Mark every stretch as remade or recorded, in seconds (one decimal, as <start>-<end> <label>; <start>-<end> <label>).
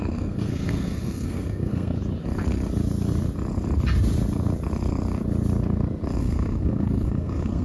0.0-2.0 remade; 2.0-6.2 recorded; 6.2-7.6 remade